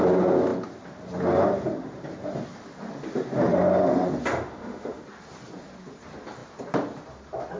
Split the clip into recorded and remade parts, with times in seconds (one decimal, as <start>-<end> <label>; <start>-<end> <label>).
0.0-4.3 recorded; 4.3-5.0 remade; 5.0-7.6 recorded